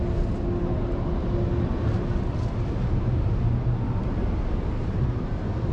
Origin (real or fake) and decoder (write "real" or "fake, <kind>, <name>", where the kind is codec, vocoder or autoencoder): real